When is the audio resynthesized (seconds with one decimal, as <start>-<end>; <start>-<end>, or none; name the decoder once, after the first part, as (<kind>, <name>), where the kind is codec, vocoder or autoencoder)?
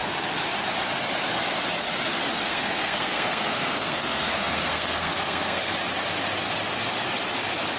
2.3-5.7 (codec, SNAC)